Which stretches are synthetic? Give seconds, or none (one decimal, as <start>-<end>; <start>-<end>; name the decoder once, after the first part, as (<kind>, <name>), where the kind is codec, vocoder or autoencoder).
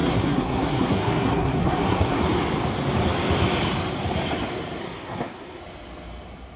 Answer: 0.0-2.2 (codec, SNAC); 4.8-5.6